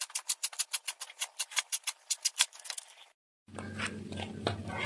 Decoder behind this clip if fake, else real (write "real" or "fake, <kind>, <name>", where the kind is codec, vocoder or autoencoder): real